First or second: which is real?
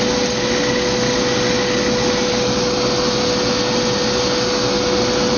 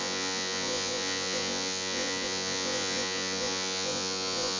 first